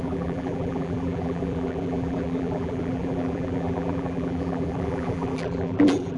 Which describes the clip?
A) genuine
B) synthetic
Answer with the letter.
B